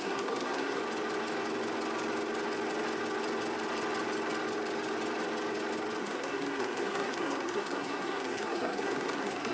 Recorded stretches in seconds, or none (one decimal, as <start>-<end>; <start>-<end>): 0.8-6.0